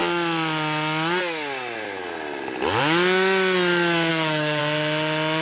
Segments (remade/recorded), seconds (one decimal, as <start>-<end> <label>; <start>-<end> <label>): 0.0-4.1 recorded; 4.1-4.6 remade; 4.6-5.4 recorded